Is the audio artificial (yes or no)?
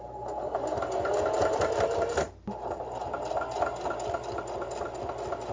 no